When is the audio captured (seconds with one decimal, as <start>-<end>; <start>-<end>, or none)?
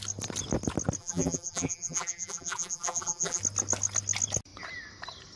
0.0-1.0; 3.4-5.4